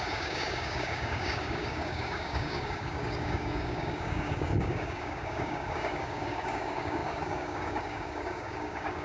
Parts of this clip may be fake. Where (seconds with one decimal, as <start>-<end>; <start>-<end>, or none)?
0.0-9.0